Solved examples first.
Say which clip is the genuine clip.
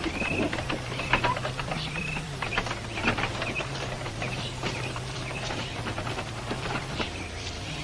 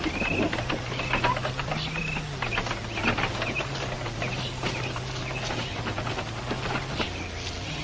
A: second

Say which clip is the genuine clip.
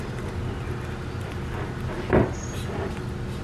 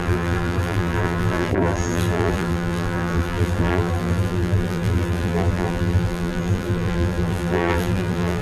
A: first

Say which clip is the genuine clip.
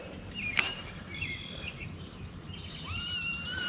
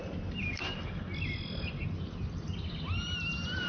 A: second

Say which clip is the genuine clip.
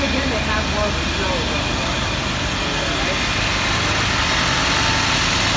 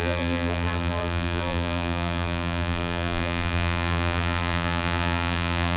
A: first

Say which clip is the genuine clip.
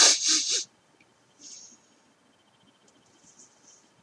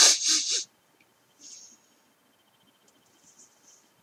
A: second